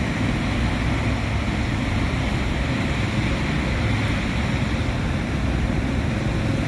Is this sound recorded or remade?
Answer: recorded